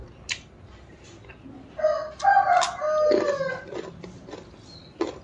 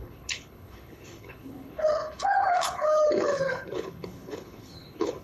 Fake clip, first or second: second